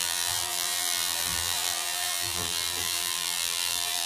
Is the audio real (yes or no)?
no